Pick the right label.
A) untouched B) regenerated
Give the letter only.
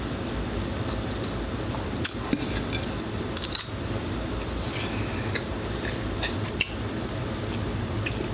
A